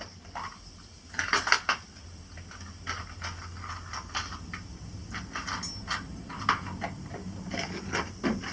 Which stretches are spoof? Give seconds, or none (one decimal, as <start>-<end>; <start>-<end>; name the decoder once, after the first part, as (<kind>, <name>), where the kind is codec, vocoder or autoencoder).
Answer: none